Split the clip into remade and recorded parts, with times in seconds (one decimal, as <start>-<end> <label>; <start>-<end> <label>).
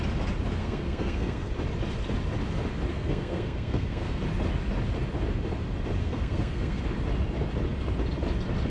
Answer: 0.0-0.6 recorded; 0.6-1.5 remade; 1.5-2.9 recorded; 2.9-4.2 remade; 4.2-6.0 recorded; 6.0-6.8 remade; 6.8-8.7 recorded